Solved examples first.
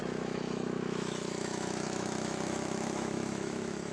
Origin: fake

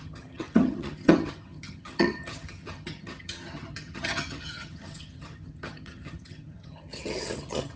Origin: fake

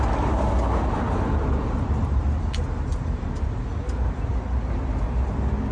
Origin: real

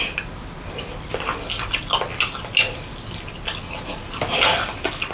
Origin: real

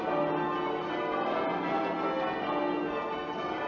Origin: real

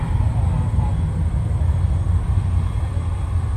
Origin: real